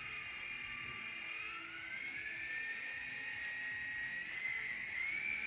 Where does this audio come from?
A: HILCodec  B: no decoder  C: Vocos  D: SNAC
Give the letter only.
B